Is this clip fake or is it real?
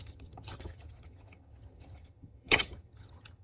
fake